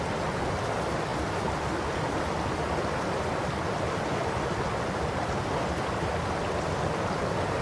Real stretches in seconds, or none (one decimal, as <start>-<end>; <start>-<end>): 0.0-7.6